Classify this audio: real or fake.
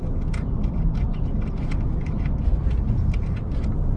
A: real